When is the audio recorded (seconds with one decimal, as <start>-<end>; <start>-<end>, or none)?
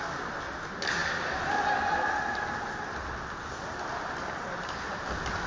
0.0-5.5